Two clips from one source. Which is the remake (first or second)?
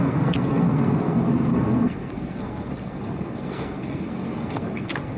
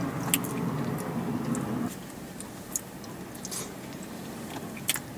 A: first